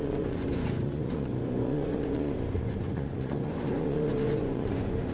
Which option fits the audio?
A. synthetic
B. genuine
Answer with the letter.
A